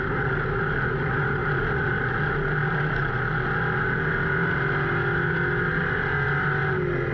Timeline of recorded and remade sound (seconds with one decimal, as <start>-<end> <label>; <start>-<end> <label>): 0.0-1.4 recorded; 1.4-2.0 remade; 2.0-2.6 recorded; 2.6-3.1 remade; 3.1-7.1 recorded